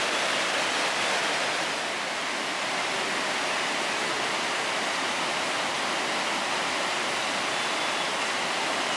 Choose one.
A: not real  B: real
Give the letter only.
B